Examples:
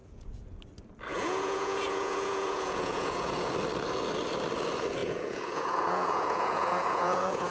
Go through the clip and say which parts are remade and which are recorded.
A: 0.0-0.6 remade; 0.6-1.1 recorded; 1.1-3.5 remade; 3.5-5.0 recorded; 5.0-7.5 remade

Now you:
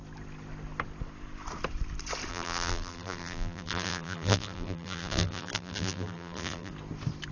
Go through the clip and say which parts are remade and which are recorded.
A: 0.0-2.3 recorded; 2.3-6.7 remade; 6.7-7.3 recorded

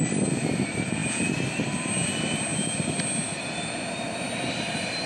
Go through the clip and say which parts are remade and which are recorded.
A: 0.0-5.1 recorded

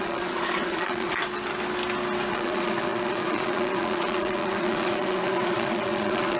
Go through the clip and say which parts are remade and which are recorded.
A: 0.0-1.2 remade; 1.2-2.3 recorded; 2.3-6.4 remade

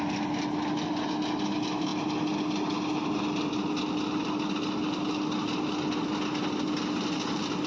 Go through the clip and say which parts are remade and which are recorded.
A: 0.0-7.7 recorded

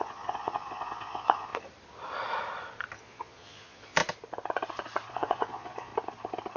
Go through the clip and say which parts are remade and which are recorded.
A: 0.0-1.5 remade; 1.5-3.0 recorded; 3.0-4.0 remade; 4.0-5.1 recorded; 5.1-5.9 remade; 5.9-6.6 recorded

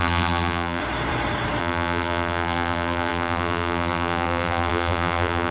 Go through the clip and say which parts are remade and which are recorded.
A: 0.0-0.8 remade; 0.8-1.6 recorded; 1.6-5.5 remade